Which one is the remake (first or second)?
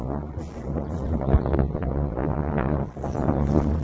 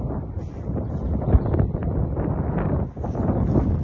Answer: first